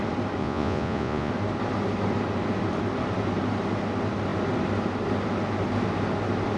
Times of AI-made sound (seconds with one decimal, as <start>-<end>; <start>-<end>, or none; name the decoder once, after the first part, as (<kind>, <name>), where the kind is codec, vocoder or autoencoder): 0.4-1.3 (vocoder, Vocos)